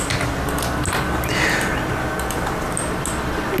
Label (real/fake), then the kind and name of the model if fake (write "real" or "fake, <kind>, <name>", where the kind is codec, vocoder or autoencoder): real